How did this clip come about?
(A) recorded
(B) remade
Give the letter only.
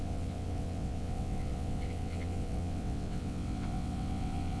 B